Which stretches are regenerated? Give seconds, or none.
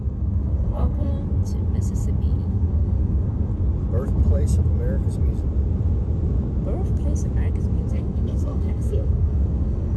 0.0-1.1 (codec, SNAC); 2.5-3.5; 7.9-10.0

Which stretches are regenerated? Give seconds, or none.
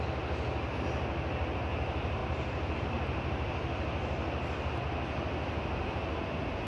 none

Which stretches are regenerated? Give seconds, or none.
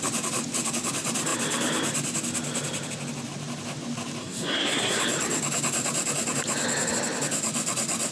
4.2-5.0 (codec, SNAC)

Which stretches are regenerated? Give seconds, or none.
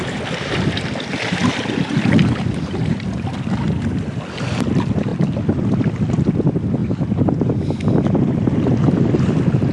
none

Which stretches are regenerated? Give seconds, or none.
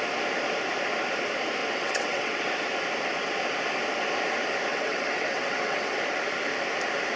1.6-2.5 (vocoder, WaveNeXt); 4.7-6.0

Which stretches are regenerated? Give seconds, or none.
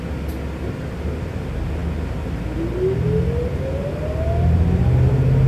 none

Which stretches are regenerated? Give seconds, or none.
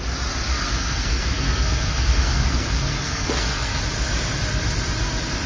0.5-3.8 (codec, SNAC)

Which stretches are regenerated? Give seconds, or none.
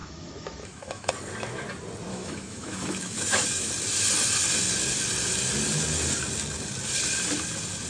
0.0-1.1 (autoencoder, DAC-VAE); 2.1-3.7